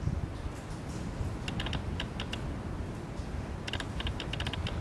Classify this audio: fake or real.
real